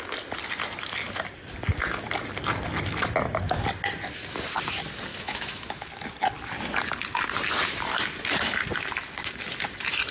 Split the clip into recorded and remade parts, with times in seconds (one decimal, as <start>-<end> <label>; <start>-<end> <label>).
0.0-5.1 recorded; 5.1-5.9 remade; 5.9-10.1 recorded